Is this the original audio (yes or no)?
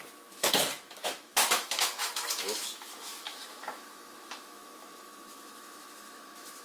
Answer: no